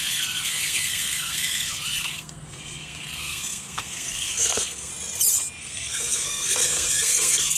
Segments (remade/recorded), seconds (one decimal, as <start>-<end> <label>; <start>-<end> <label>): 0.0-4.9 remade; 4.9-5.6 recorded; 5.6-7.6 remade